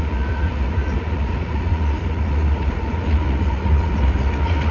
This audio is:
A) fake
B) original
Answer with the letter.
A